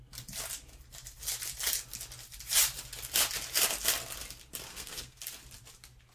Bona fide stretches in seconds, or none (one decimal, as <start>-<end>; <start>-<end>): 0.0-4.7; 5.2-6.1